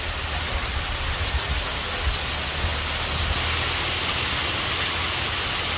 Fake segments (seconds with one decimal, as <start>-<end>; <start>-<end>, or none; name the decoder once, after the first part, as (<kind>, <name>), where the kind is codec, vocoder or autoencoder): none